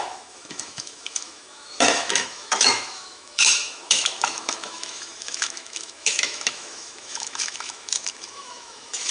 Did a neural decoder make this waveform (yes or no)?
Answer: yes